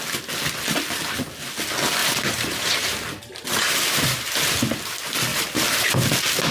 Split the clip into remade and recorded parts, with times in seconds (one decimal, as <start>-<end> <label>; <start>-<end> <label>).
0.0-2.0 recorded; 2.0-4.3 remade; 4.3-5.3 recorded; 5.3-6.0 remade; 6.0-6.5 recorded